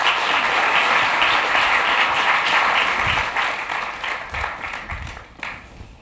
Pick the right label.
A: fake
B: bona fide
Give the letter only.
B